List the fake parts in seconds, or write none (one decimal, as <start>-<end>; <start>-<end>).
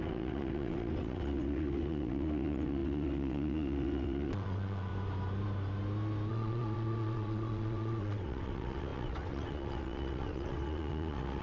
0.0-4.9; 6.3-11.4